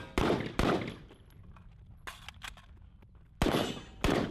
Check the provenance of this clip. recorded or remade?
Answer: recorded